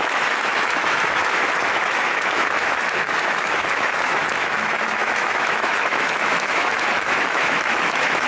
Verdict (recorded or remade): remade